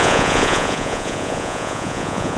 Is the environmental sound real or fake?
fake